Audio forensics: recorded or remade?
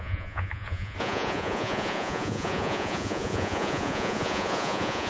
remade